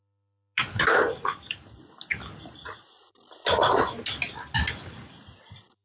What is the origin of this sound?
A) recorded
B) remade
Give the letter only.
A